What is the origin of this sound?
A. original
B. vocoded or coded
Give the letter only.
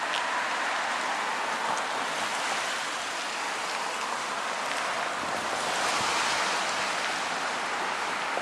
A